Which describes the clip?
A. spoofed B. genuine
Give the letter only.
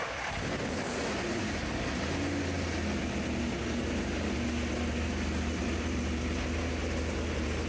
B